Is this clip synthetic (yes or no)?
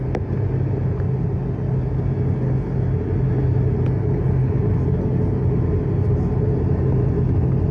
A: no